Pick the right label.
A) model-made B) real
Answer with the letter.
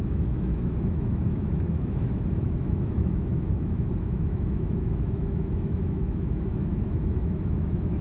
A